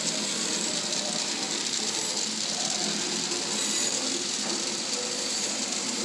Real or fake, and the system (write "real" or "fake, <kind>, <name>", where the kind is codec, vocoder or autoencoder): real